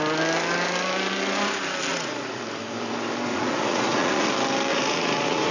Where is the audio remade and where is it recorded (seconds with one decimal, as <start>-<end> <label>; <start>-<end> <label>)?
0.0-1.9 recorded; 1.9-2.4 remade; 2.4-3.3 recorded; 3.3-4.3 remade; 4.3-4.7 recorded; 4.7-5.5 remade